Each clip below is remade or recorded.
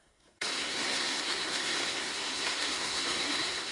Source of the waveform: remade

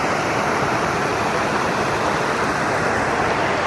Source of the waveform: recorded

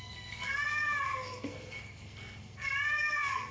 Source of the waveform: remade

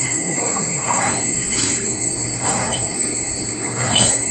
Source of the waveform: remade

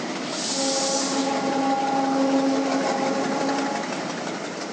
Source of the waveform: recorded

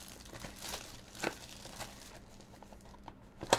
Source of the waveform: recorded